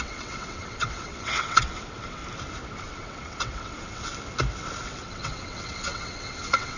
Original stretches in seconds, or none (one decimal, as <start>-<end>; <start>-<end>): 2.2-2.8; 4.1-4.8